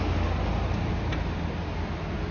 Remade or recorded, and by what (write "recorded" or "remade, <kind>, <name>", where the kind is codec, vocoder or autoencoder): recorded